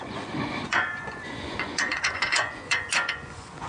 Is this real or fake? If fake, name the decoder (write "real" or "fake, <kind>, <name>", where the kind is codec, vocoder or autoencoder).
fake, vocoder, Vocos